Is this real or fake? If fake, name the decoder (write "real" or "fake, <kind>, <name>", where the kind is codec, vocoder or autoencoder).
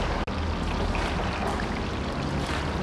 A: real